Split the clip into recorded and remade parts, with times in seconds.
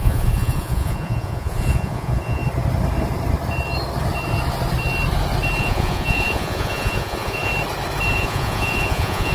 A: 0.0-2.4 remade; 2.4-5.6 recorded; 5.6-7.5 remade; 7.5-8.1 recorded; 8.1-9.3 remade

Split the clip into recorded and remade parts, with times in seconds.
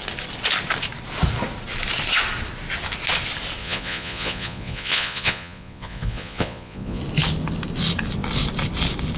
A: 0.0-3.6 recorded; 3.6-7.0 remade; 7.0-9.2 recorded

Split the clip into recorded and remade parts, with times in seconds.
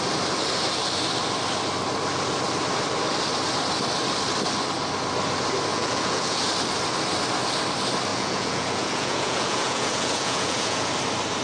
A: 0.0-5.7 recorded; 5.7-6.5 remade; 6.5-8.1 recorded; 8.1-10.9 remade; 10.9-11.4 recorded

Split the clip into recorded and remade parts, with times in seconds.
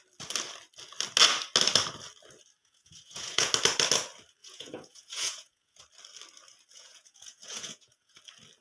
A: 0.0-2.6 recorded; 2.6-3.5 remade; 3.5-4.4 recorded; 4.4-5.8 remade; 5.8-6.7 recorded; 6.7-8.2 remade; 8.2-8.6 recorded